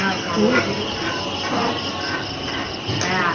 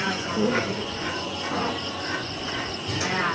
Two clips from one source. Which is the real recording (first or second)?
first